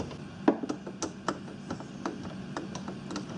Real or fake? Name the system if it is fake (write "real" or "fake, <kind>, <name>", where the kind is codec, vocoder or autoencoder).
real